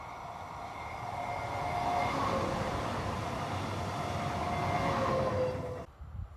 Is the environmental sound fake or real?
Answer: real